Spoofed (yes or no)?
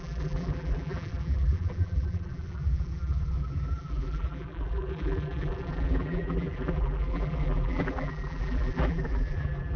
yes